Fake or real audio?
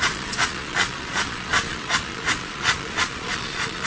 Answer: fake